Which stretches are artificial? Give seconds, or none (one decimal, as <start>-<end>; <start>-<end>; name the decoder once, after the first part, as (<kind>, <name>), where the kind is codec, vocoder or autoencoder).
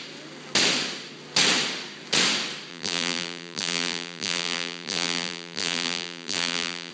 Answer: 2.7-6.9 (vocoder, BigVGAN v2)